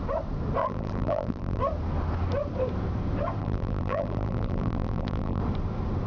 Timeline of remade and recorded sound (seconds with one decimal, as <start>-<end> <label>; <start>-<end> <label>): 0.0-0.6 recorded; 0.6-1.6 remade; 1.6-3.4 recorded; 3.4-5.4 remade; 5.4-6.1 recorded